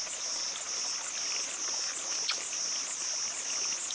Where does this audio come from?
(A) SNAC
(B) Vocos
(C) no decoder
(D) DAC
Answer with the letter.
C